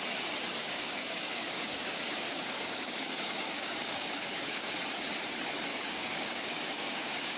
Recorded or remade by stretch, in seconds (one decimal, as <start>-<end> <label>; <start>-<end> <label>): 0.0-0.6 recorded; 0.6-4.7 remade; 4.7-5.7 recorded; 5.7-7.4 remade

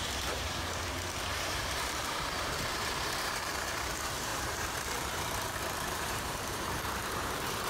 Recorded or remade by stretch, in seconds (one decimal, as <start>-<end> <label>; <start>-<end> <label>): 0.0-1.3 recorded; 1.3-3.5 remade; 3.5-4.3 recorded; 4.3-7.7 remade

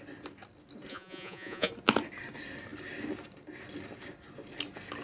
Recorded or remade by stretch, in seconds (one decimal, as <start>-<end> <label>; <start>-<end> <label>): 0.0-0.9 recorded; 0.9-1.7 remade; 1.7-5.0 recorded

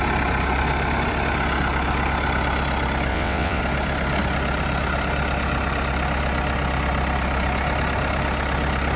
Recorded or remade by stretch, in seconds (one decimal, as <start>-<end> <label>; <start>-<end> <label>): 0.0-3.1 recorded; 3.1-3.6 remade; 3.6-9.0 recorded

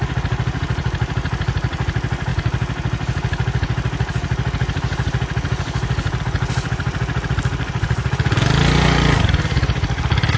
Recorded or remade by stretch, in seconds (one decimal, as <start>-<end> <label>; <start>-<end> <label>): 0.0-10.4 recorded

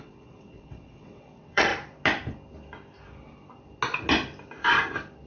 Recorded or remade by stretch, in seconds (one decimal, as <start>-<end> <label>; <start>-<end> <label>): 0.0-1.7 remade; 1.7-5.3 recorded